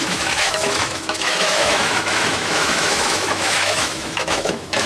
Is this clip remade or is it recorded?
remade